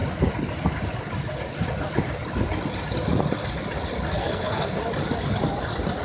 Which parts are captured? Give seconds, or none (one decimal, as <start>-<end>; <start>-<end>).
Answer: 0.0-4.2; 4.8-6.0

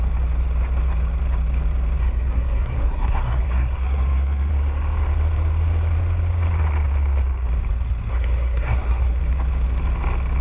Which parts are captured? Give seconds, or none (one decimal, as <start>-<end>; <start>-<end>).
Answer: 0.0-2.0; 4.5-8.1; 9.2-10.4

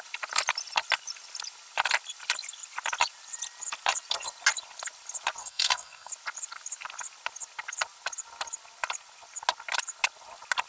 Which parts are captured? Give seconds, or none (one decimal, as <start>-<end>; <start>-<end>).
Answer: 0.0-5.4; 6.1-10.7

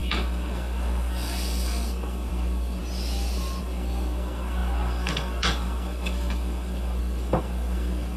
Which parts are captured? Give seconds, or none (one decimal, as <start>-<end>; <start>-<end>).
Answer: 2.8-3.6

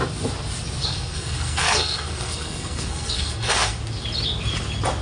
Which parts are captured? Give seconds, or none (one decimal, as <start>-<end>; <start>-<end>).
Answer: 0.0-0.8; 3.8-5.0

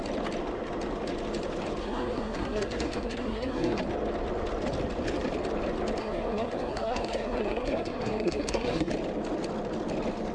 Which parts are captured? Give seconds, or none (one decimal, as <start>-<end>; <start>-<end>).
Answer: 0.0-1.8; 3.8-6.0; 8.9-10.3